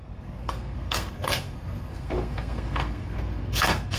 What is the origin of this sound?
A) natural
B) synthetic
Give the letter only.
B